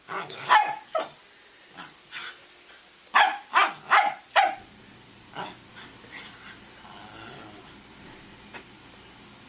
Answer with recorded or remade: recorded